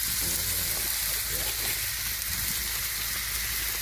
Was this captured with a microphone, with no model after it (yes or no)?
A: yes